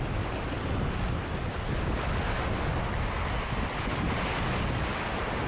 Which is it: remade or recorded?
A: recorded